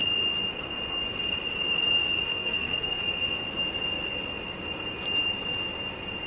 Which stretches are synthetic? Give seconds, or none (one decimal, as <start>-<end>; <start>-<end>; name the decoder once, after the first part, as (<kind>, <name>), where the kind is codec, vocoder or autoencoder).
2.3-3.0 (codec, SNAC)